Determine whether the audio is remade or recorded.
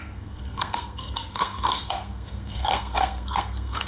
remade